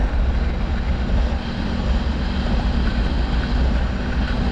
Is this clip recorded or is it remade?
recorded